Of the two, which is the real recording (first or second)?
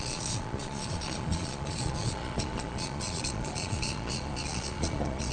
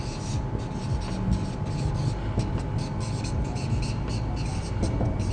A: second